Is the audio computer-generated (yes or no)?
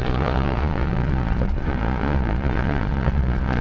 yes